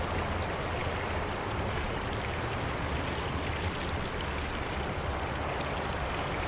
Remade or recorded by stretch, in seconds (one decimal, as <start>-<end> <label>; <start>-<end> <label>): 0.0-6.5 recorded